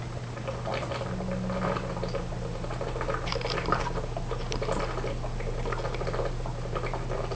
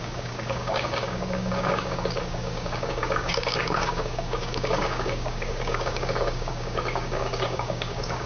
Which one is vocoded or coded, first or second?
second